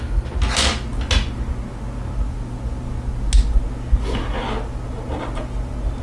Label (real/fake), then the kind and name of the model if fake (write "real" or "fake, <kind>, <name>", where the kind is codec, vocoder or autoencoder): real